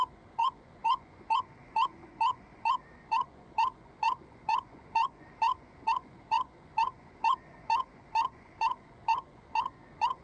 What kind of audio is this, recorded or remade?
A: remade